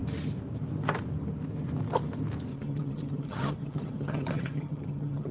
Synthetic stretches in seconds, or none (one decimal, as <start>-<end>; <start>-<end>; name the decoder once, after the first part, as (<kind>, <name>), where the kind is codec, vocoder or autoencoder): 2.5-5.3 (vocoder, HiFi-GAN)